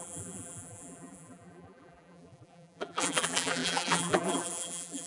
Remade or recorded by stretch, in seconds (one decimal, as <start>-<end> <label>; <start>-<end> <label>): 0.0-5.1 remade